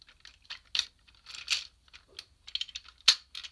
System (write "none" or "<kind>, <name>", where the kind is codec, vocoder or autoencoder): none